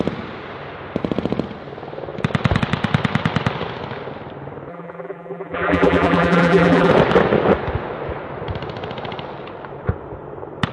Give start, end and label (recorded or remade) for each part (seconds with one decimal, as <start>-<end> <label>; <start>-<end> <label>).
0.0-4.7 recorded; 4.7-6.9 remade; 6.9-10.7 recorded